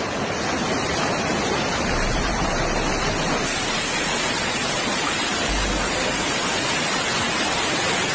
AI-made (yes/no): no